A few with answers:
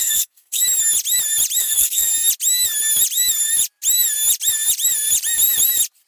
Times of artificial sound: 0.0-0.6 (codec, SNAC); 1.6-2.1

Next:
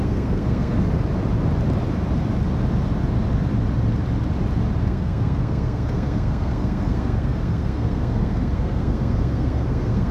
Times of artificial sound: 0.0-0.9 (codec, SNAC); 4.8-10.1

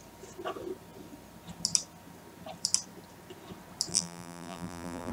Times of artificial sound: 3.9-5.1 (vocoder, BigVGAN v2)

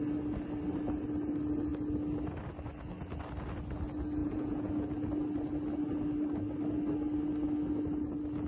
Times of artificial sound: 4.2-4.7 (vocoder, Vocos)

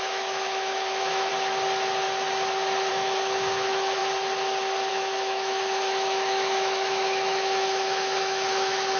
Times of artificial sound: 0.0-1.3 (autoencoder, DAC-VAE); 2.9-4.0; 4.9-9.0